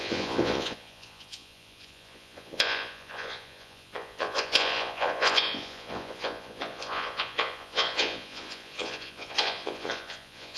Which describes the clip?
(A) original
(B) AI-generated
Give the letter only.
B